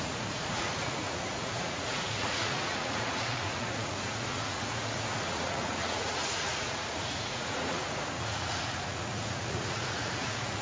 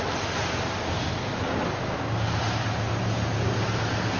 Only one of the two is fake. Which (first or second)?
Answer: first